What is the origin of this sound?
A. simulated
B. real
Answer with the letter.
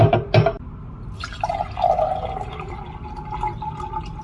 B